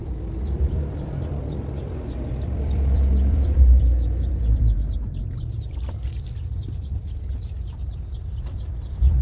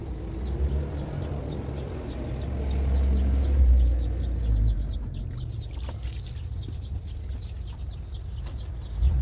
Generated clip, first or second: first